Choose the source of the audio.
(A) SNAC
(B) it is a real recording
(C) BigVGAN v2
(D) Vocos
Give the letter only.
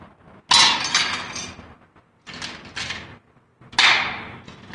B